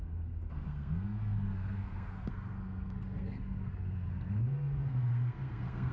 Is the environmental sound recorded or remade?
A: remade